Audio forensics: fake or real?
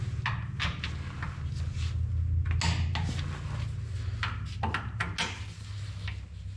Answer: real